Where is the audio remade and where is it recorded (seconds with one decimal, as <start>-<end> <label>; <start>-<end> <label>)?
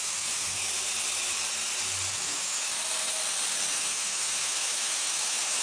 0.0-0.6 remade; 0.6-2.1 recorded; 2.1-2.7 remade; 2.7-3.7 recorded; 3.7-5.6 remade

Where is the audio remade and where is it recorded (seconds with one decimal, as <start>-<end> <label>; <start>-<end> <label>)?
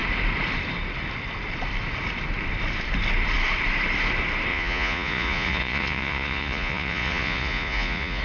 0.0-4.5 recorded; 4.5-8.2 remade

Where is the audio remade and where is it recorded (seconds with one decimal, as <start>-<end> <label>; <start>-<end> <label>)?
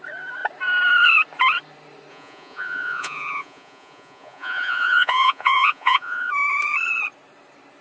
0.0-2.1 recorded; 2.1-6.3 remade; 6.3-7.8 recorded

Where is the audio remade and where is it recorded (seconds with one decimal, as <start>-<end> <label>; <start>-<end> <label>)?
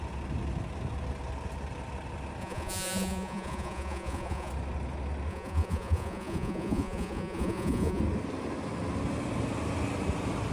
0.0-2.4 recorded; 2.4-4.5 remade; 4.5-5.3 recorded; 5.3-8.0 remade; 8.0-10.5 recorded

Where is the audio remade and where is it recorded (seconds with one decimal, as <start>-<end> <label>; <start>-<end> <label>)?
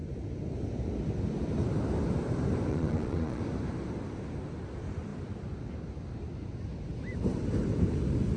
0.0-2.7 recorded; 2.7-3.4 remade; 3.4-8.4 recorded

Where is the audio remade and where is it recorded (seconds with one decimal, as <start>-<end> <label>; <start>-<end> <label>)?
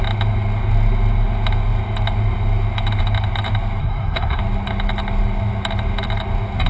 0.0-3.8 recorded; 3.8-4.4 remade; 4.4-6.7 recorded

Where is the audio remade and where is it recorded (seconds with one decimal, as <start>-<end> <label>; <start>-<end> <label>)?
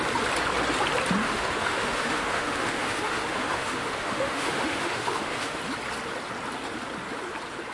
0.0-1.2 recorded; 1.2-5.6 remade; 5.6-7.7 recorded